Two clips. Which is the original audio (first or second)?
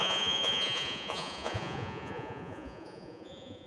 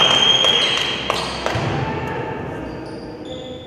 second